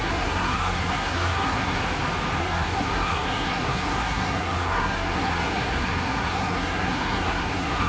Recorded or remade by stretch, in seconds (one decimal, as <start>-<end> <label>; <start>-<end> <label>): 0.0-1.8 remade; 1.8-2.4 recorded; 2.4-7.9 remade

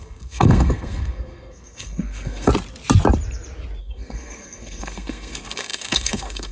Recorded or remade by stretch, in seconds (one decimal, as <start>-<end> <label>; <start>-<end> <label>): 0.0-2.5 remade; 2.5-3.8 recorded; 3.8-6.5 remade

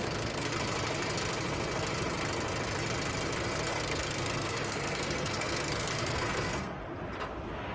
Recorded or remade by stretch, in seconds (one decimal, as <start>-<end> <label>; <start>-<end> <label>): 0.0-0.5 remade; 0.5-3.7 recorded; 3.7-6.8 remade; 6.8-7.7 recorded

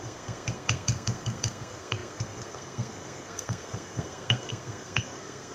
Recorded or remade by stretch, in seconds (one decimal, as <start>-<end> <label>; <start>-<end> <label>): 0.0-5.5 remade